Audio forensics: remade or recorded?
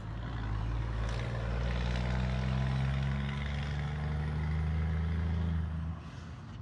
recorded